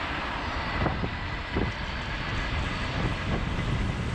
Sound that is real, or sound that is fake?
real